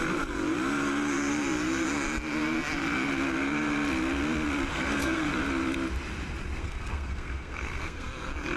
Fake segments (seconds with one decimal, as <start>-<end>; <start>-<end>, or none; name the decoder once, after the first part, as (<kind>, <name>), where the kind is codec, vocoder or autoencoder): 4.7-5.3 (codec, SNAC); 6.6-8.1